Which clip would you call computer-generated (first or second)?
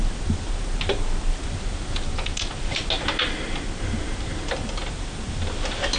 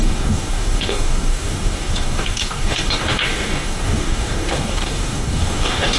second